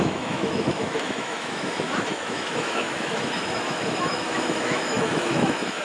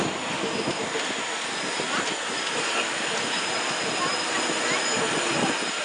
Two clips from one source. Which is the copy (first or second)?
first